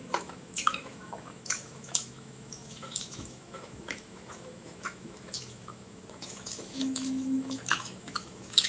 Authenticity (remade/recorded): remade